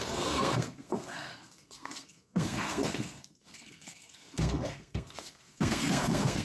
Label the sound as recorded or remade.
remade